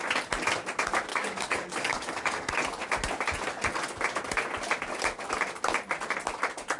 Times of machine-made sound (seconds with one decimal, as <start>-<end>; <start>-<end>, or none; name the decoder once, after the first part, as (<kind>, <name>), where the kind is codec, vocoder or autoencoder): 1.1-2.5 (codec, DAC)

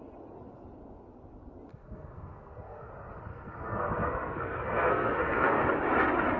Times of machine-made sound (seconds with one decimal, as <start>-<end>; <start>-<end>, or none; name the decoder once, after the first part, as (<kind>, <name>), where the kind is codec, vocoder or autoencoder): 1.7-2.9 (codec, SNAC); 3.3-5.6

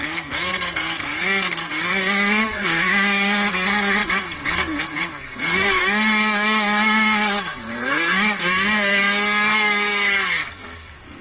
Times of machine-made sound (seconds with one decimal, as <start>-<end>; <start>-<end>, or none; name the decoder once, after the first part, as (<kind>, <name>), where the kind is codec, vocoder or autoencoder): 0.0-11.2 (codec, SNAC)

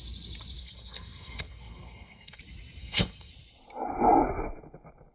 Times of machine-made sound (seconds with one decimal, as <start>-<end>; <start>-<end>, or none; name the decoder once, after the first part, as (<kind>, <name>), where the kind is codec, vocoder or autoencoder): 0.6-2.4 (codec, SNAC); 2.8-3.3

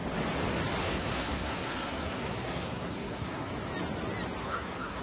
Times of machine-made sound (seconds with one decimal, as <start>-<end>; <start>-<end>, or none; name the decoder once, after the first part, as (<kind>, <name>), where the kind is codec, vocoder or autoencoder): 0.8-3.5 (codec, SNAC); 4.4-5.0

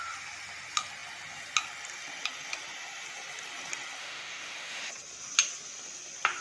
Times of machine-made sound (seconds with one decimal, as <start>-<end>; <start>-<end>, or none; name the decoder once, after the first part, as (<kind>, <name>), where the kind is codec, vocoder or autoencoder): 4.0-4.9 (autoencoder, DAC-VAE)

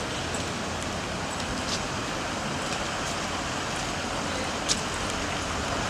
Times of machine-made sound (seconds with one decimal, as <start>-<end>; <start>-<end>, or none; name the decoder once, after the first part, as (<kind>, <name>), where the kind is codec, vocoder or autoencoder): none

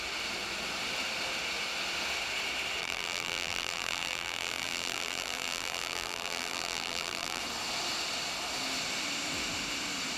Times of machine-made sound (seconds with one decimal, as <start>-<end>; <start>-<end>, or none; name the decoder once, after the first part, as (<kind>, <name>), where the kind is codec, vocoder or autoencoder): 2.8-7.4 (vocoder, BigVGAN v2)